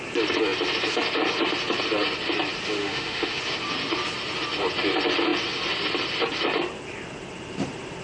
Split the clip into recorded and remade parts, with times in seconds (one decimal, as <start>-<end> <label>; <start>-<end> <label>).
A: 0.0-2.8 recorded; 2.8-3.4 remade; 3.4-8.0 recorded